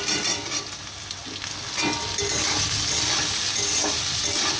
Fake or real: real